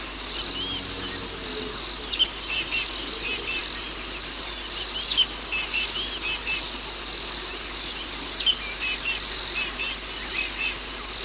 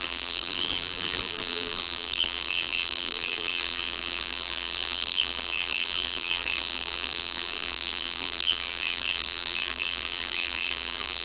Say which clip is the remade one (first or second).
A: second